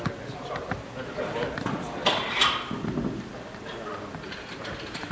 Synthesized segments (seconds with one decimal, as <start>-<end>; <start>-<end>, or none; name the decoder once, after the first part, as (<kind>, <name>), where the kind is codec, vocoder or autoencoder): none